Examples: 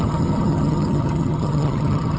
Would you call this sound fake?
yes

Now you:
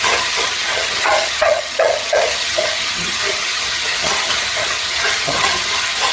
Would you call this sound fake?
yes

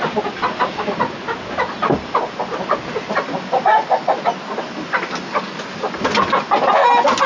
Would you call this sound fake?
no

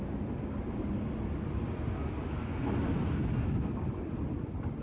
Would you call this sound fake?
no